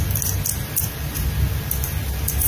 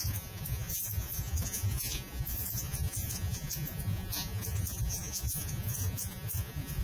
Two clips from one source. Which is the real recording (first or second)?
first